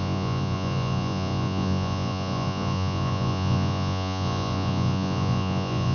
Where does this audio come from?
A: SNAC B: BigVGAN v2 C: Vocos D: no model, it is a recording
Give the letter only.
C